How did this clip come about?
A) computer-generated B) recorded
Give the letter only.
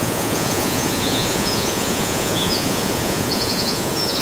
A